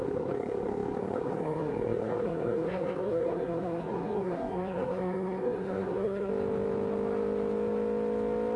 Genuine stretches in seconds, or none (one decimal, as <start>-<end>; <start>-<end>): 6.3-8.6